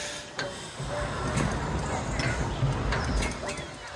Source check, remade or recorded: recorded